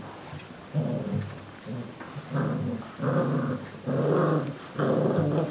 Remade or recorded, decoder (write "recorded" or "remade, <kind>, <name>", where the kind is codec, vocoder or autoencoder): recorded